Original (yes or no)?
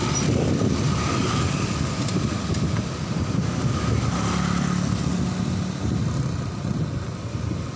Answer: yes